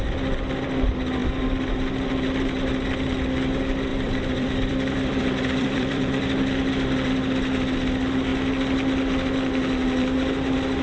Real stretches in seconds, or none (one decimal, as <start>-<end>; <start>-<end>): 0.0-3.9; 6.2-10.8